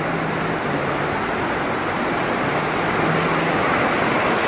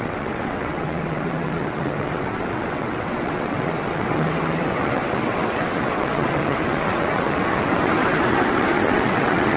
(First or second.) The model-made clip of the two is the second